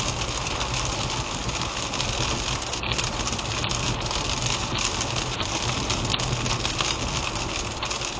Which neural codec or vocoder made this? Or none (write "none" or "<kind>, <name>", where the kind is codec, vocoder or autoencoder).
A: none